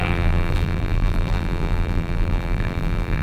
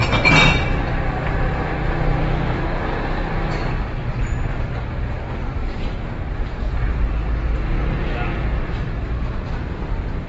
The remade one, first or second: first